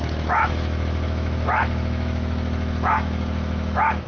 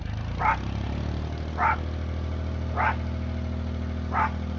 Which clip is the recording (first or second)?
second